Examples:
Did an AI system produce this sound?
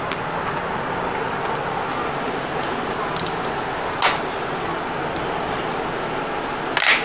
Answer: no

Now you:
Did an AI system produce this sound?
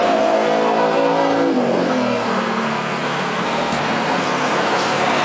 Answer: yes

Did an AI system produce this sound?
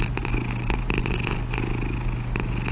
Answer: no